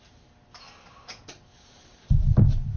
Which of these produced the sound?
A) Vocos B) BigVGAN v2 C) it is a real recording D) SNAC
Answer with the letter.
C